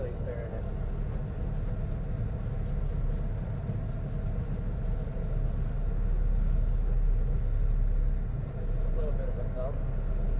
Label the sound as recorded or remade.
recorded